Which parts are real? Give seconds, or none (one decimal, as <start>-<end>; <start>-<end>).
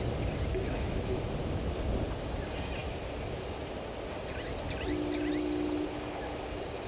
0.0-0.5; 1.3-6.9